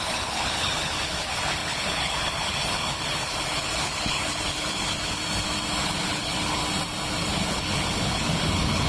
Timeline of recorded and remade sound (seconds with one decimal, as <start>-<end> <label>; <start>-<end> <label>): 0.0-5.2 remade; 5.2-5.8 recorded; 5.8-6.6 remade; 6.6-7.3 recorded; 7.3-8.9 remade